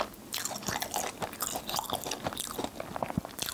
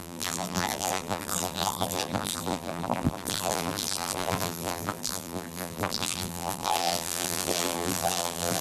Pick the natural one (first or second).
first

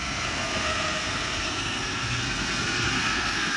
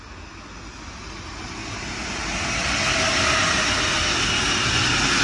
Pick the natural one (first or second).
second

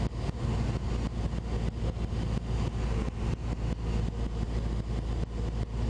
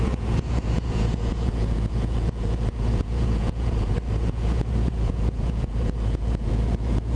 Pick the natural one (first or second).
first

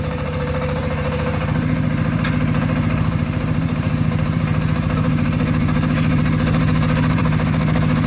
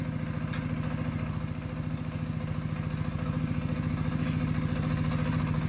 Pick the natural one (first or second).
second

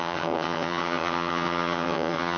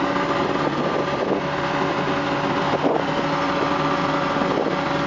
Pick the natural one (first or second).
second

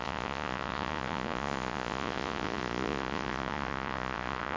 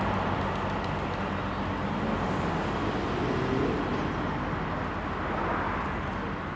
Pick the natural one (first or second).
second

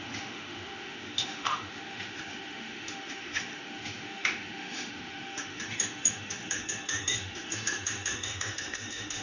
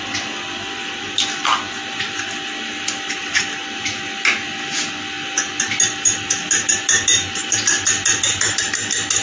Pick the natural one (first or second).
second